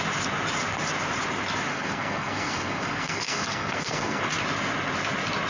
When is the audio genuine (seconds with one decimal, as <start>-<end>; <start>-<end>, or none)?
0.0-1.7; 4.2-5.5